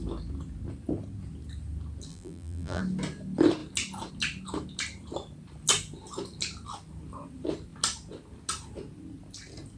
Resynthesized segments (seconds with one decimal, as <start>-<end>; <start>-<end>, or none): 2.1-2.8